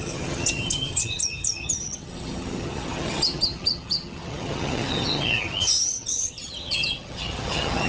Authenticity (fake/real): fake